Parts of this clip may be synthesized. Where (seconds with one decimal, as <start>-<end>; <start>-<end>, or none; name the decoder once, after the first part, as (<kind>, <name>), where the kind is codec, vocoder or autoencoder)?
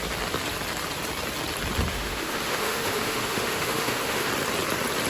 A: 1.9-4.3 (autoencoder, DAC-VAE)